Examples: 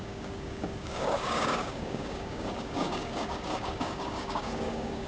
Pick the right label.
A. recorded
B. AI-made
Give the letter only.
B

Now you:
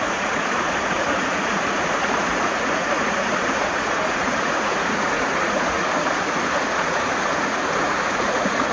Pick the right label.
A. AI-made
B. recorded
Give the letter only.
A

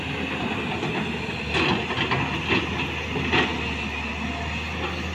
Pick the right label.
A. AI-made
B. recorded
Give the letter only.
B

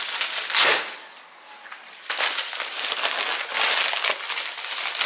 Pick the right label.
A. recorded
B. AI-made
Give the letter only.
A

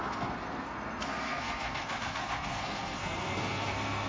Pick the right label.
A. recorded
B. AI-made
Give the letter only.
B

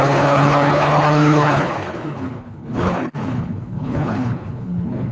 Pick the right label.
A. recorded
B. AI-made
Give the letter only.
B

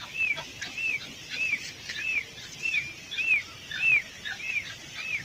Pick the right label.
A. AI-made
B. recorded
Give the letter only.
B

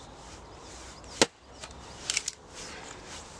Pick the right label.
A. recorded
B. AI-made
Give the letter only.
A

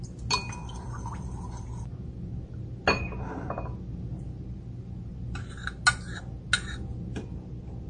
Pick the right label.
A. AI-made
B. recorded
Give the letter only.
B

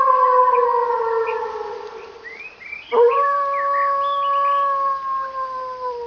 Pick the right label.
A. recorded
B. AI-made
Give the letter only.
A